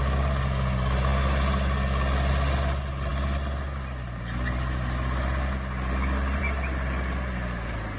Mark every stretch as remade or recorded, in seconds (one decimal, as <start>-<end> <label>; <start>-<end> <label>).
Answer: 0.0-8.0 recorded